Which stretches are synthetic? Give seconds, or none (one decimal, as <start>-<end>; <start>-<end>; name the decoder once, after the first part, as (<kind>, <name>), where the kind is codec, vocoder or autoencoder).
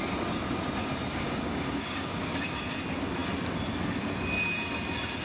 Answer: 1.1-2.6 (codec, DAC)